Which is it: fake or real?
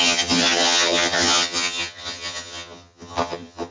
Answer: fake